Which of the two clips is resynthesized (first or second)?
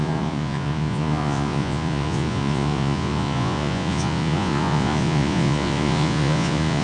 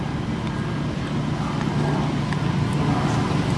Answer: first